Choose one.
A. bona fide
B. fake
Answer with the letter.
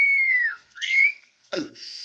B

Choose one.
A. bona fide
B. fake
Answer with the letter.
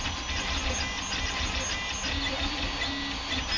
A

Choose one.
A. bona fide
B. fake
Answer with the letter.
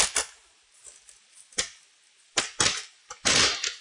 A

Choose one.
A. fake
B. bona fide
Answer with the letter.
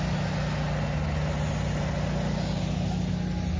B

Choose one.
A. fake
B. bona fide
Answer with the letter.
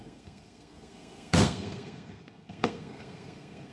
A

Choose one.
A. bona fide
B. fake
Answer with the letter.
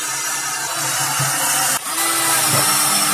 A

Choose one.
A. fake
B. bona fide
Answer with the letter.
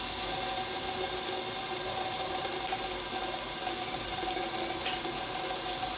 B